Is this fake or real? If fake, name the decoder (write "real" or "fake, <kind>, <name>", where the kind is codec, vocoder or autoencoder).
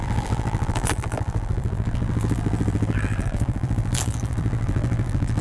fake, vocoder, BigVGAN v2